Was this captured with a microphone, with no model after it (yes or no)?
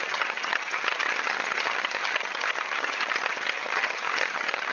no